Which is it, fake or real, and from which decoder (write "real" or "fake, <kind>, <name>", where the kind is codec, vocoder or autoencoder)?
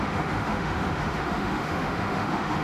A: fake, autoencoder, DAC-VAE